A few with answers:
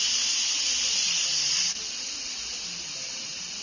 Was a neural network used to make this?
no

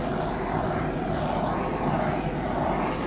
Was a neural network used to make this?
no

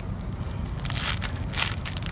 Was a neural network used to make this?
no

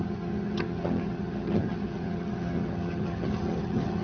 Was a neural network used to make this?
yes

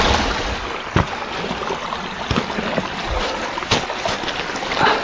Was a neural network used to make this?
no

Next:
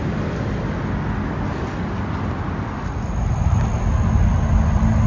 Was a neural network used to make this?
no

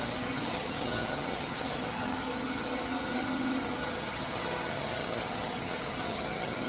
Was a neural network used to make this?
yes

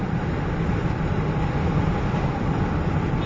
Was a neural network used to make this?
no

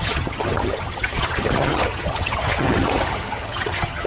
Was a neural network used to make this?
yes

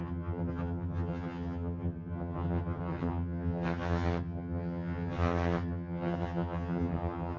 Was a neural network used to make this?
yes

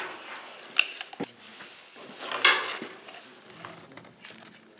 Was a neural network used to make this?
no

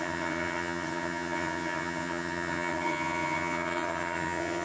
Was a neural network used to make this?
yes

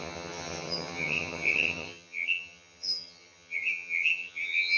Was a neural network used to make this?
yes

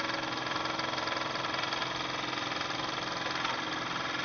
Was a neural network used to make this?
no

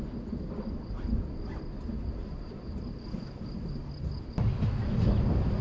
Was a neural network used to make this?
no